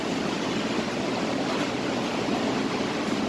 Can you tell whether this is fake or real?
real